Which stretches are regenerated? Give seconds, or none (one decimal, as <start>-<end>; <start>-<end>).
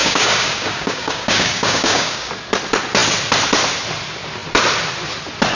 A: 0.0-2.3